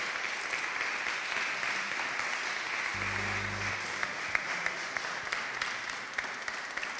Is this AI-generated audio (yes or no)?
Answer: no